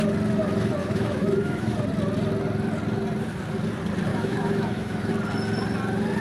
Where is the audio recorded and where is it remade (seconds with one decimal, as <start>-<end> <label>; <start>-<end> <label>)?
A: 0.0-0.8 recorded; 0.8-1.7 remade; 1.7-4.1 recorded; 4.1-5.1 remade; 5.1-6.2 recorded